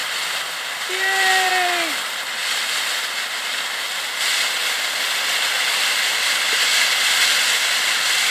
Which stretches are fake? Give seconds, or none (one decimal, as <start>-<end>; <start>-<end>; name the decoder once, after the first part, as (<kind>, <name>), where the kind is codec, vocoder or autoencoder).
0.0-1.5 (vocoder, BigVGAN v2); 4.6-6.1